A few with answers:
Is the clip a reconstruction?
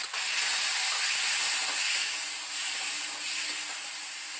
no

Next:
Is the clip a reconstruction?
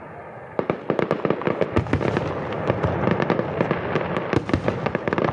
no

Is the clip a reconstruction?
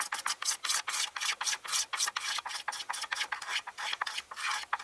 no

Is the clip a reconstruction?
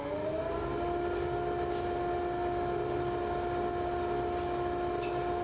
no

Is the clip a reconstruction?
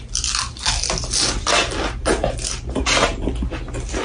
no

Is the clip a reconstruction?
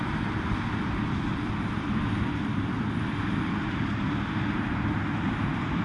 no